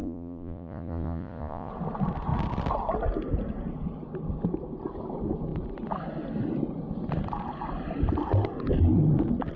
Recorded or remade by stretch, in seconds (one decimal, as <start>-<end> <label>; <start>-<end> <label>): 0.0-1.7 remade; 1.7-9.6 recorded